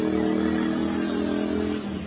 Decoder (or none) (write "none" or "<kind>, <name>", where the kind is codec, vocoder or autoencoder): none